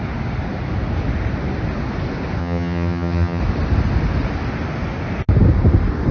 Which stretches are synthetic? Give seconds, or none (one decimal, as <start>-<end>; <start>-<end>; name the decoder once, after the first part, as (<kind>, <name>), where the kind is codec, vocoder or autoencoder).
2.4-3.4 (vocoder, HiFi-GAN)